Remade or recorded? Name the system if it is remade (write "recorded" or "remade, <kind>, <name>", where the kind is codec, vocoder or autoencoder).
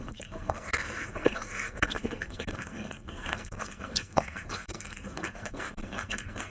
remade, codec, SNAC